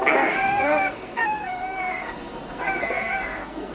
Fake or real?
fake